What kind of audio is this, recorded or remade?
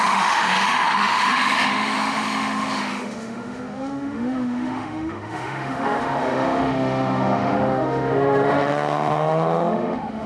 remade